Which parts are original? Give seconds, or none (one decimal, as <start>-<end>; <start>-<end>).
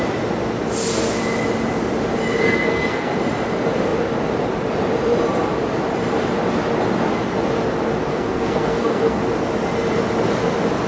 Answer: 0.0-2.4; 3.1-8.1; 9.2-10.9